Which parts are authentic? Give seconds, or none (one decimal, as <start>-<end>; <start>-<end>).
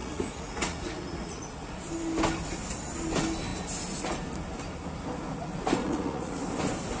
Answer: 1.7-5.8; 6.4-7.0